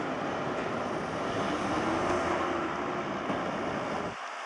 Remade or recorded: recorded